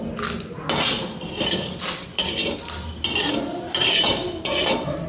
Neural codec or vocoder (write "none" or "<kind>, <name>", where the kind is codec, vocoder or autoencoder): none